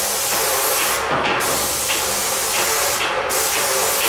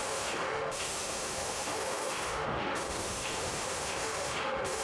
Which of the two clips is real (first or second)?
first